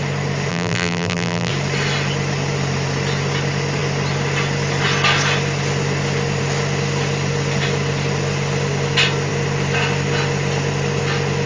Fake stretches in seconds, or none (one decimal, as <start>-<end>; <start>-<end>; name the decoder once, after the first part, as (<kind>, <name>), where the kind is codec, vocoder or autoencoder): 0.5-1.5 (vocoder, BigVGAN v2)